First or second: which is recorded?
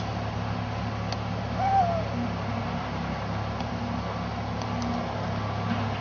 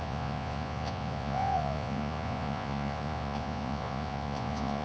first